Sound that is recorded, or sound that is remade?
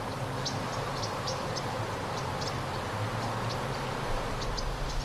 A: recorded